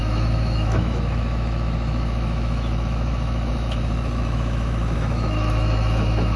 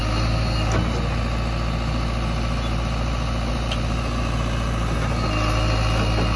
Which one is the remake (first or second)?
first